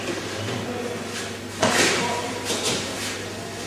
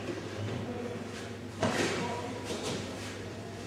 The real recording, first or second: first